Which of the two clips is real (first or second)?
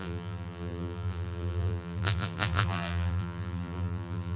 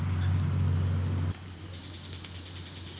second